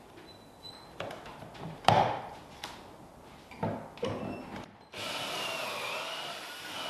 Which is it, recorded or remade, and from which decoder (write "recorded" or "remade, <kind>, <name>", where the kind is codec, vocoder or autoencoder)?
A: recorded